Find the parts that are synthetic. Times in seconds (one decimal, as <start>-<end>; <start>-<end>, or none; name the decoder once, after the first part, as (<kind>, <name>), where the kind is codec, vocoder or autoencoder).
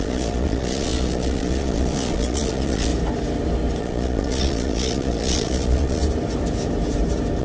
0.0-2.9 (vocoder, Vocos); 3.8-6.0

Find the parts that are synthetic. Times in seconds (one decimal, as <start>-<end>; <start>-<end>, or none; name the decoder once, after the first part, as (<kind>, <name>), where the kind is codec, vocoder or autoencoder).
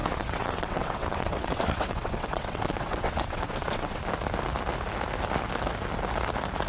0.0-4.0 (vocoder, WaveNeXt)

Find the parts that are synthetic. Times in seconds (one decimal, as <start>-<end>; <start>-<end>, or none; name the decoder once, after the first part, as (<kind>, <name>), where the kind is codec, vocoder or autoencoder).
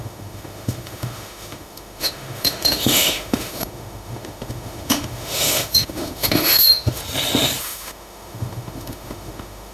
0.0-7.0 (autoencoder, DAC-VAE); 7.6-9.7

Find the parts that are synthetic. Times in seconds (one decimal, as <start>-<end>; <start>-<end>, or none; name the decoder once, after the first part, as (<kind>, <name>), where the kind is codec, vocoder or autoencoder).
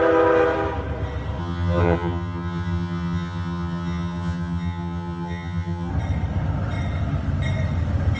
1.4-5.9 (vocoder, HiFi-GAN)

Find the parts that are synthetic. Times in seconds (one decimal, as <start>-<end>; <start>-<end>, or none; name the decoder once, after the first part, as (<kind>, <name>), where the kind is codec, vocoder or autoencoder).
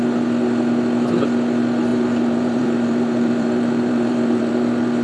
1.9-4.5 (vocoder, BigVGAN v2)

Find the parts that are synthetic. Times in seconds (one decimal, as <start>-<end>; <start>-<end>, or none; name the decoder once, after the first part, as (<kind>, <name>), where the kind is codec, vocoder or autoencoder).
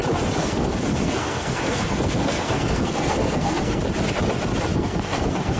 0.4-3.8 (codec, SNAC); 4.7-5.6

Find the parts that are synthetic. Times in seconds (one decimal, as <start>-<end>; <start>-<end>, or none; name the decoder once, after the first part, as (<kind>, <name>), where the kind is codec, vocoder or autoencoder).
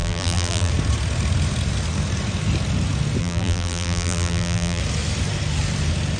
0.0-0.7 (vocoder, BigVGAN v2); 3.2-4.8